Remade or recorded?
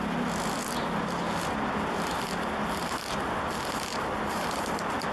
recorded